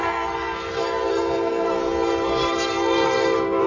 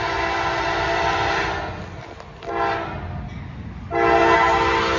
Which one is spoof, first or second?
first